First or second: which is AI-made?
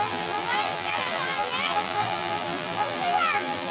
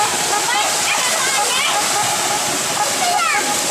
first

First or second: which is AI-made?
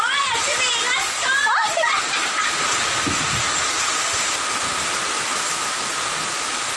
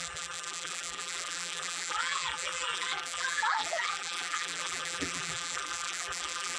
second